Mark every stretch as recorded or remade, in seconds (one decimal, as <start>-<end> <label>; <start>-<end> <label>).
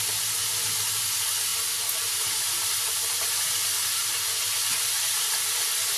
0.0-6.0 recorded